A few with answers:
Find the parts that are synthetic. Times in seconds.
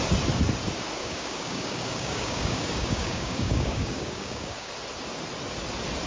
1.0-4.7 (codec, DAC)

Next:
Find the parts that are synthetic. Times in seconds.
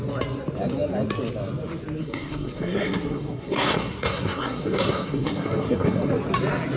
2.0-6.1 (codec, SNAC)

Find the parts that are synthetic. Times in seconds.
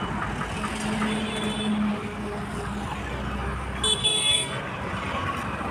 4.0-4.6 (codec, SNAC)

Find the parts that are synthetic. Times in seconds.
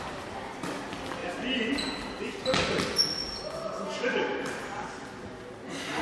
none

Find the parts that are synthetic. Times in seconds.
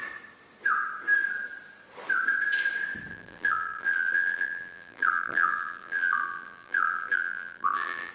3.1-8.1 (vocoder, BigVGAN v2)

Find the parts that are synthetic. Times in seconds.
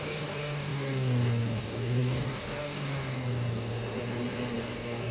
0.0-3.7 (codec, DAC); 4.6-5.1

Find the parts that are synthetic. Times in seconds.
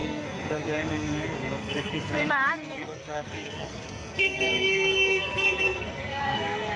0.0-6.8 (codec, SNAC)